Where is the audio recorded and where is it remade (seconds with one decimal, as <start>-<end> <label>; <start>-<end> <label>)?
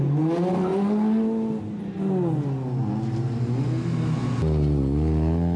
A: 0.0-5.6 recorded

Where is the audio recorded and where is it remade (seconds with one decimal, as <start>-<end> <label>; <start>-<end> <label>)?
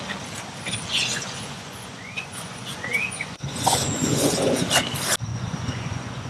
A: 0.0-0.9 recorded; 0.9-4.7 remade; 4.7-5.3 recorded; 5.3-6.3 remade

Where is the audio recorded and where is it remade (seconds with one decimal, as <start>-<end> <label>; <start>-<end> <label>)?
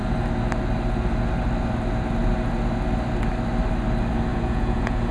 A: 0.0-4.3 recorded; 4.3-5.1 remade